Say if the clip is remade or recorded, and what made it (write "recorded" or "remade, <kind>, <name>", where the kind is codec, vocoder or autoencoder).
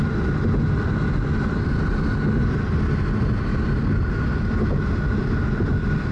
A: recorded